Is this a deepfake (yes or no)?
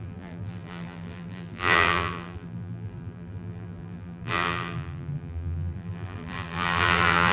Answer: yes